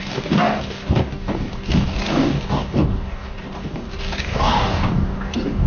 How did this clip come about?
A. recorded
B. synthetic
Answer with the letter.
B